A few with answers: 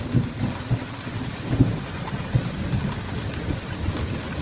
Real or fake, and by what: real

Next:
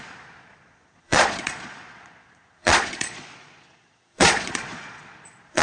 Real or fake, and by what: fake, vocoder, Vocos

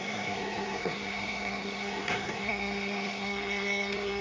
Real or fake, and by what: fake, codec, SNAC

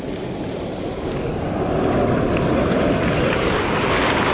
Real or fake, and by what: real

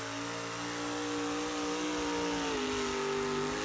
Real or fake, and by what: real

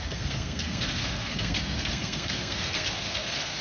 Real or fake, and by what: fake, codec, SNAC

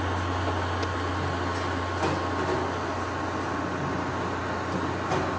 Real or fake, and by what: real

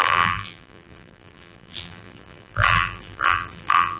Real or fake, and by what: fake, vocoder, BigVGAN v2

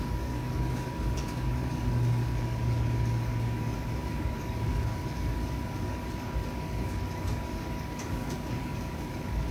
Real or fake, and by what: fake, codec, DAC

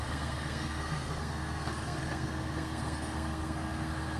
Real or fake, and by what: fake, codec, SNAC